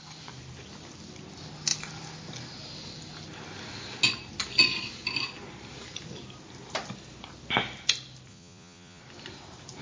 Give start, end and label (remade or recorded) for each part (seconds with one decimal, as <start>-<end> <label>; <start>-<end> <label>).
0.0-8.3 recorded; 8.3-9.0 remade; 9.0-9.8 recorded